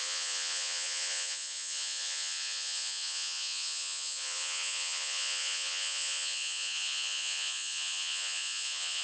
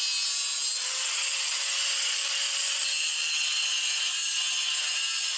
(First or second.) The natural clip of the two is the second